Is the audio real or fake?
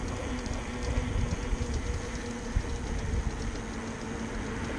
real